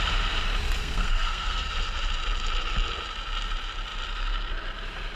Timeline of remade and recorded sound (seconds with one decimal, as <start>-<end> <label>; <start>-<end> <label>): 0.0-0.8 recorded; 0.8-1.7 remade; 1.7-5.2 recorded